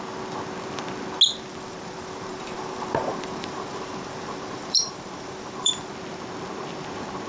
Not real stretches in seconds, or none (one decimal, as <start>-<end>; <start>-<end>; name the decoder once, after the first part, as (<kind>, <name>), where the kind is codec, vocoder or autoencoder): 1.5-5.9 (vocoder, BigVGAN v2)